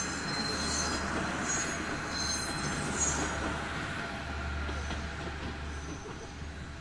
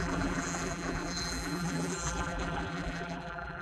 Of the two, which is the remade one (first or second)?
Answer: second